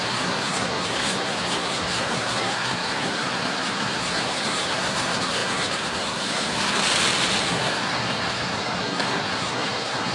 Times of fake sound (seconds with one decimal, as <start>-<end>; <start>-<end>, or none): 0.0-6.8; 7.4-10.1